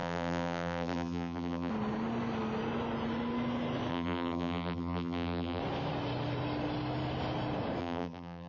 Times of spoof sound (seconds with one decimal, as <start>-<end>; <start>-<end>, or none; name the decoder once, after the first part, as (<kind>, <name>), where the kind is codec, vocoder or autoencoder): 0.0-1.7 (vocoder, BigVGAN v2); 3.9-5.6; 7.8-8.5